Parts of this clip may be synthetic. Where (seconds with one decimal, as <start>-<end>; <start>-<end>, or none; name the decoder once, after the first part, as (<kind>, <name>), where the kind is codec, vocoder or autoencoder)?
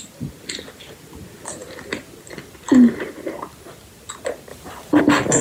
4.5-5.0 (vocoder, BigVGAN v2)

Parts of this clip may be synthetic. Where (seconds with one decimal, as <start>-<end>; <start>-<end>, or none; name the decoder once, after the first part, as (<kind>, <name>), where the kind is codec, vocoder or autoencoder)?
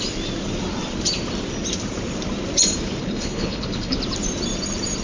3.0-4.0 (codec, HILCodec)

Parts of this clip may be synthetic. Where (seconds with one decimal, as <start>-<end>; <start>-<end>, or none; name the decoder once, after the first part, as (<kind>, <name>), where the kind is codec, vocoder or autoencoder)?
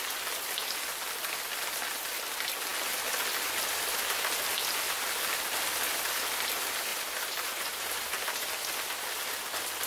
6.9-8.5 (vocoder, BigVGAN v2)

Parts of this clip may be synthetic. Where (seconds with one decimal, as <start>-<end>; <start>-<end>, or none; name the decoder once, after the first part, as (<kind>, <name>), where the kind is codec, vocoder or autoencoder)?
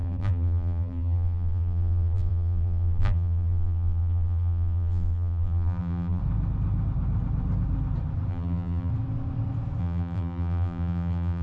0.0-6.2 (vocoder, BigVGAN v2); 8.3-8.9; 9.8-11.4